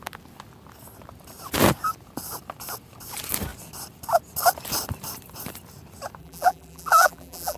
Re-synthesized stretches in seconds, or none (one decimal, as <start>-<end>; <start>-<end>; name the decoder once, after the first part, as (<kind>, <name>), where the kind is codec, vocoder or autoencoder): 6.2-7.6 (vocoder, BigVGAN v2)